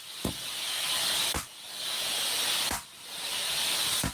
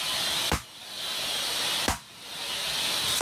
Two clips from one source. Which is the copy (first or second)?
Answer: first